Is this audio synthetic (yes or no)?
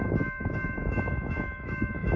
yes